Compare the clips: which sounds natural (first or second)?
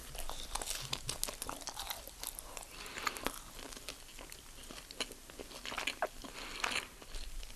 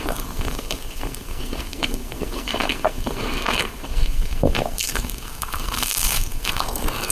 first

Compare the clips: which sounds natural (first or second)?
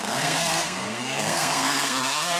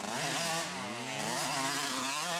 second